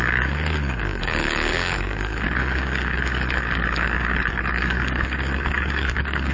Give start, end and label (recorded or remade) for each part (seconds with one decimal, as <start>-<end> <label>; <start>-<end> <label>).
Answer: 0.0-6.3 remade